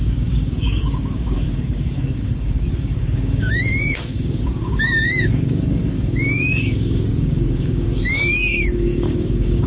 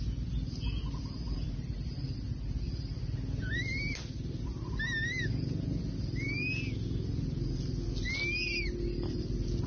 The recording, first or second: second